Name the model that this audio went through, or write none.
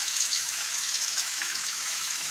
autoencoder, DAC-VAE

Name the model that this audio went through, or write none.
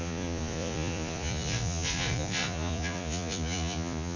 vocoder, Vocos